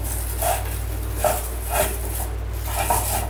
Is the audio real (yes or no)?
yes